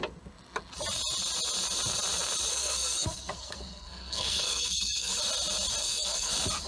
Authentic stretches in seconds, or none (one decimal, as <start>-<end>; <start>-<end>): 0.0-2.5; 5.2-5.8; 6.3-6.7